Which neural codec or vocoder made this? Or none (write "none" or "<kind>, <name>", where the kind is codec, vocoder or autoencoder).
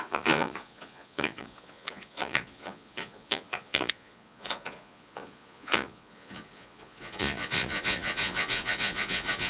vocoder, Vocos